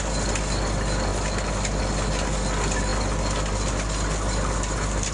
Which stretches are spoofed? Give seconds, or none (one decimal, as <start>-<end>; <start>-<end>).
none